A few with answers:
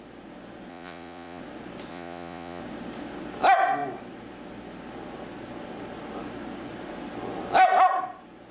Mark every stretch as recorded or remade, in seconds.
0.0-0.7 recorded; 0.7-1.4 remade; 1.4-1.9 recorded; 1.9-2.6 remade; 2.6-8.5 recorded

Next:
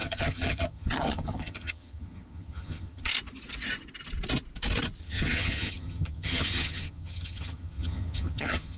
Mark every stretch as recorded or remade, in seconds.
0.0-3.1 remade; 3.1-5.0 recorded; 5.0-8.8 remade

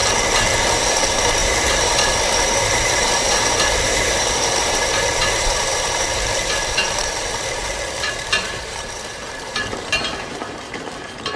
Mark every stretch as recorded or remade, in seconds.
0.0-0.6 recorded; 0.6-11.4 remade

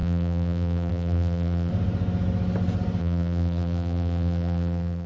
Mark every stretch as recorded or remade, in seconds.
0.0-1.7 remade; 1.7-3.0 recorded; 3.0-5.1 remade

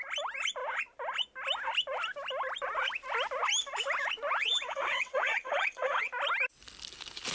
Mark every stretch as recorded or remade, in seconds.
0.0-4.4 recorded; 4.4-6.1 remade; 6.1-7.3 recorded